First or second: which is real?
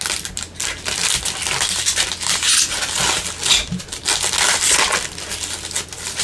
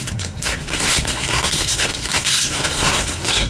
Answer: first